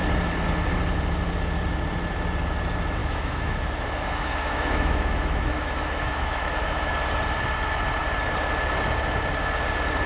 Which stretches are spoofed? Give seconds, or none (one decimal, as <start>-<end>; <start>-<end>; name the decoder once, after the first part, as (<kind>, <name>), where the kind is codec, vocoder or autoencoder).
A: 3.0-6.9 (autoencoder, DAC-VAE)